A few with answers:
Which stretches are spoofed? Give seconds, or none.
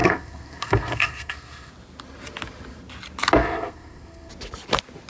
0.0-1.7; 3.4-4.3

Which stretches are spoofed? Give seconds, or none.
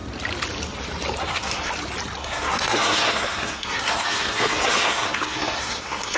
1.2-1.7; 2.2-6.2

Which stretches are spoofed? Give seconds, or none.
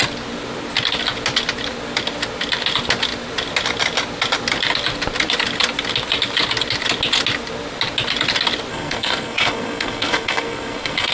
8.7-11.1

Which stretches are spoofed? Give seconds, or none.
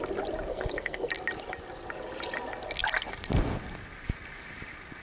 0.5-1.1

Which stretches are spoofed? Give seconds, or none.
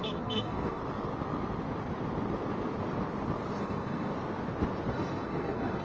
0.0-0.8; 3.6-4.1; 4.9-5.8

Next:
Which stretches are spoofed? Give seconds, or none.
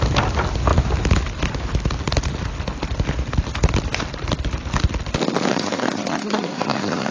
5.5-7.1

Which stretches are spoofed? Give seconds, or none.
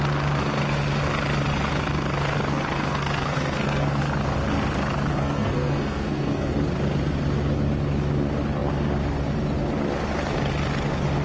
2.5-4.0; 5.1-6.5